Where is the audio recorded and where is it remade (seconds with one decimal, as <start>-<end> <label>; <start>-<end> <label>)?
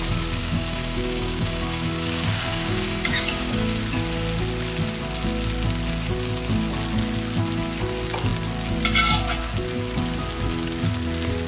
0.0-0.4 recorded; 0.4-3.8 remade; 3.8-11.5 recorded